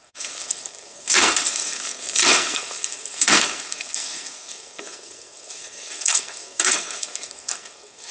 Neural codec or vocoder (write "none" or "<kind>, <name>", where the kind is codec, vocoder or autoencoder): codec, SNAC